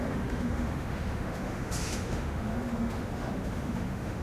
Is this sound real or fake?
fake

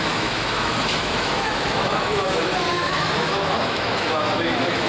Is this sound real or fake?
fake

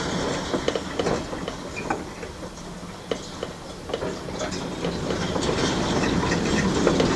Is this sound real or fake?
real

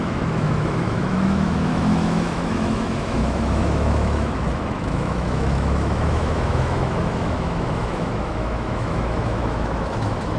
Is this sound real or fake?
fake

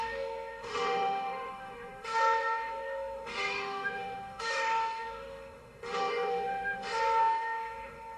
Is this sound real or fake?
fake